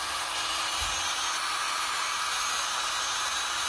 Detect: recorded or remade recorded